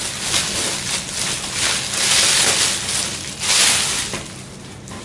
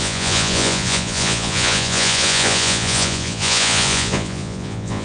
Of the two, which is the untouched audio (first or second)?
first